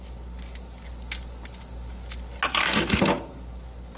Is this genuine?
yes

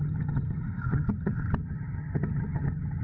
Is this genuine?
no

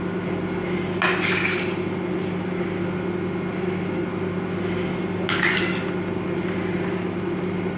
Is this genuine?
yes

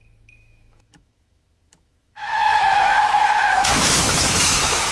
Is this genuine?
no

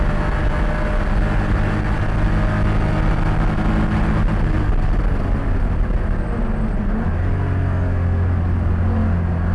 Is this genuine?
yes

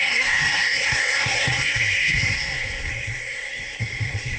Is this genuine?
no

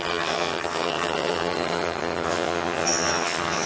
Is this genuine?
no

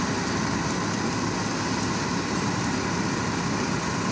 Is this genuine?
yes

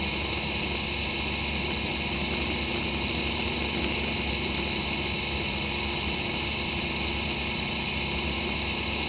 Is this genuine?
yes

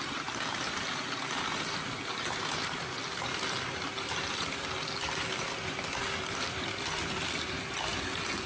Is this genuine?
yes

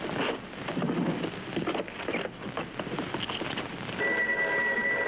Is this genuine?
yes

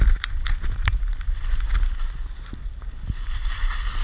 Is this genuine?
no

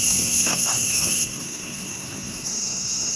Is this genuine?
no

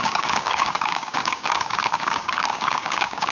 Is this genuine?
no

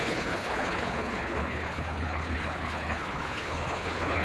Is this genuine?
no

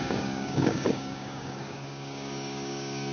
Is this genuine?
no